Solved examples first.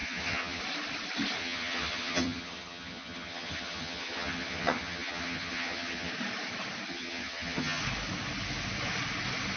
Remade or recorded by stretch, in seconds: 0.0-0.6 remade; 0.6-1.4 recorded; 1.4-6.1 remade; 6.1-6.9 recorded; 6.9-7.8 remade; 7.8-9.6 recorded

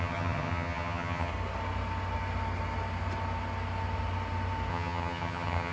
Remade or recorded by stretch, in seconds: 0.0-1.3 remade; 1.3-4.7 recorded; 4.7-5.7 remade

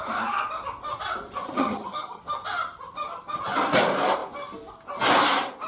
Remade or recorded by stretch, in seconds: 0.0-1.4 recorded; 1.4-2.2 remade; 2.2-5.7 recorded

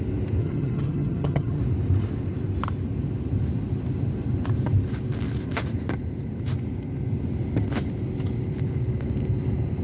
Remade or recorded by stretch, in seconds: 0.0-0.4 recorded; 0.4-1.6 remade; 1.6-9.8 recorded

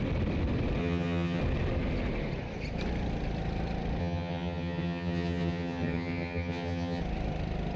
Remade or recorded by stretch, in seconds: 0.0-0.8 recorded; 0.8-1.4 remade; 1.4-4.0 recorded; 4.0-7.0 remade; 7.0-7.8 recorded

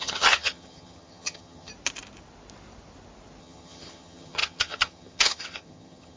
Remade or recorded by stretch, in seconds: 0.0-1.7 remade; 1.7-3.4 recorded; 3.4-6.2 remade

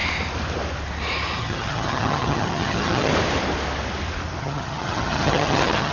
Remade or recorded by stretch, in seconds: 0.0-1.4 recorded; 1.4-3.1 remade; 3.1-4.4 recorded; 4.4-5.9 remade

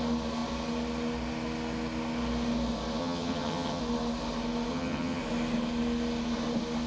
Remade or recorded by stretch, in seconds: 0.0-3.0 recorded; 3.0-3.8 remade; 3.8-4.7 recorded; 4.7-5.2 remade; 5.2-6.9 recorded